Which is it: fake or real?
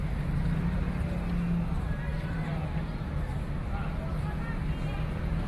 real